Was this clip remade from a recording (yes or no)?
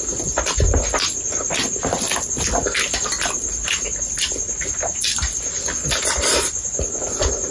no